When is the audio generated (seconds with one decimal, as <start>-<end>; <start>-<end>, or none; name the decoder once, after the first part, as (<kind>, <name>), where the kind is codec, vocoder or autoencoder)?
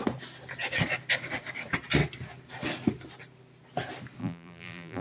4.2-5.0 (vocoder, BigVGAN v2)